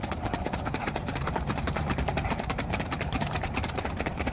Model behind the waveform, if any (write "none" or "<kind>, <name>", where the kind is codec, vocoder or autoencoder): vocoder, BigVGAN v2